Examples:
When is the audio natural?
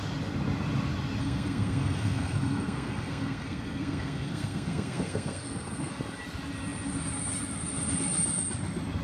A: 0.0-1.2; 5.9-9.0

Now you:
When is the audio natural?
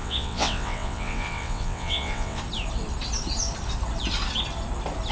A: 2.4-5.1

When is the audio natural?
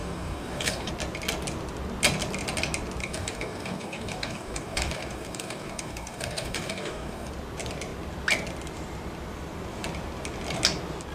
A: 0.9-3.0; 7.3-11.1